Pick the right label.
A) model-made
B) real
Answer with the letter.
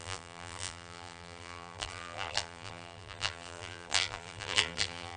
A